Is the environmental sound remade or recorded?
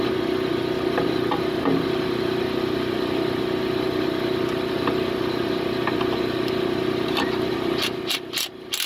recorded